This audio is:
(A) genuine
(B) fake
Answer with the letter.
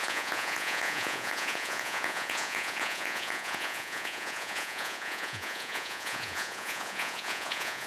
B